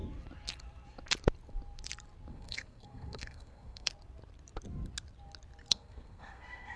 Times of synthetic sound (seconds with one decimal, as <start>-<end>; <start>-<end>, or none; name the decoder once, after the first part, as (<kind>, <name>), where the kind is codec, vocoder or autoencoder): 2.3-3.9 (codec, SNAC); 5.7-6.8